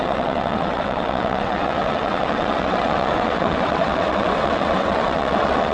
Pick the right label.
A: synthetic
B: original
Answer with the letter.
A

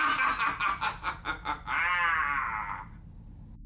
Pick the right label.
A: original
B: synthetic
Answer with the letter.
A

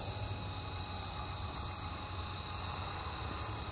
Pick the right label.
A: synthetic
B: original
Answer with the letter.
B